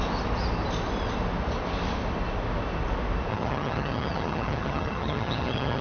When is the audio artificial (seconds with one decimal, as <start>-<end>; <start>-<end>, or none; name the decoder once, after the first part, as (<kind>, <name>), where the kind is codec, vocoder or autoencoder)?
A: 3.3-5.8 (vocoder, HiFi-GAN)